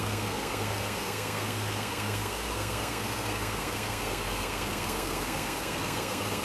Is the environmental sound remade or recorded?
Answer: remade